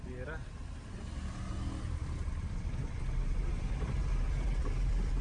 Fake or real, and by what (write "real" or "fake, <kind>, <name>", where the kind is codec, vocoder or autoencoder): real